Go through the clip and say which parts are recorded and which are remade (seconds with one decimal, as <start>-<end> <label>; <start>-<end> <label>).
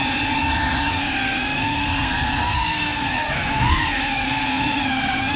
0.0-0.9 recorded; 0.9-5.4 remade